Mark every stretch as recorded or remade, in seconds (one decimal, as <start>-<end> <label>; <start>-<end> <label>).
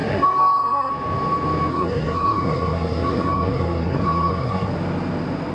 0.0-0.9 remade; 0.9-1.7 recorded; 1.7-4.7 remade; 4.7-5.5 recorded